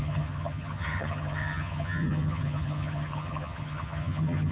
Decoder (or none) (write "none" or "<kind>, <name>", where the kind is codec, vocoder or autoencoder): vocoder, HiFi-GAN